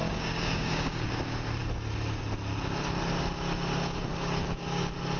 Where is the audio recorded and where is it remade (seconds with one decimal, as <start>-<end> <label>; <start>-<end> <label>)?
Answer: 0.0-1.2 remade; 1.2-4.1 recorded; 4.1-4.8 remade; 4.8-5.2 recorded